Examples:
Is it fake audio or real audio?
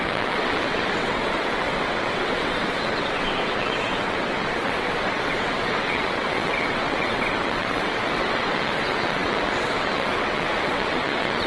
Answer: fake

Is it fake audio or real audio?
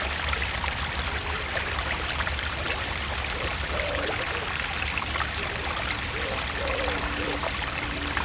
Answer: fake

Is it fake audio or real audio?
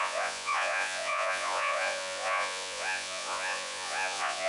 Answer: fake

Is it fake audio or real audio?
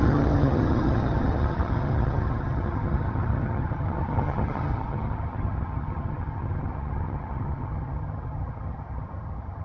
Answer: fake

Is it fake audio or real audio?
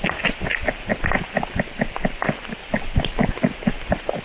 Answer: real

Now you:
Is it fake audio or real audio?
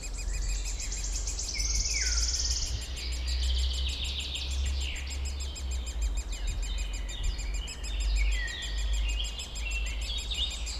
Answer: real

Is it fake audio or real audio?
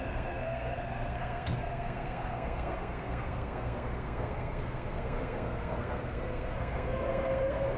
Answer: fake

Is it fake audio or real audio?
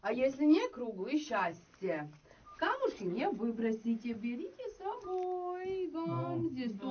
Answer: real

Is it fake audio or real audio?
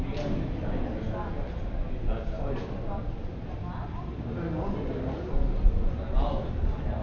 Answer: real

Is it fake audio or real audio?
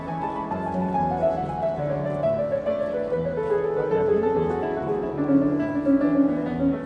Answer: real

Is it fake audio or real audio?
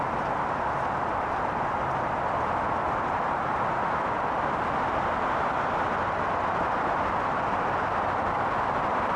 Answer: real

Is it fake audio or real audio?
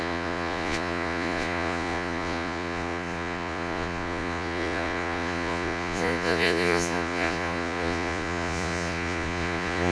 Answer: fake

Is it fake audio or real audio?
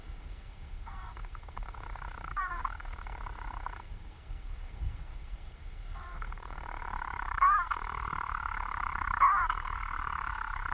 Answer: fake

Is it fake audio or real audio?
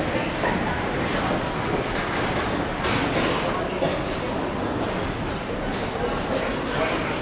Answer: real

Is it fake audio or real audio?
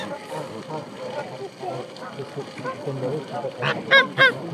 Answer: real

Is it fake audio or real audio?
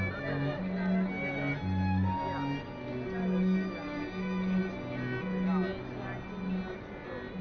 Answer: real